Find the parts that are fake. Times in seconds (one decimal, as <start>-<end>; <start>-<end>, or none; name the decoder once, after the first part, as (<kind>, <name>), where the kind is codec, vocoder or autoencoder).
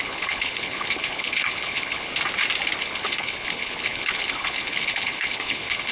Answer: 0.0-2.1 (codec, HILCodec); 2.8-5.9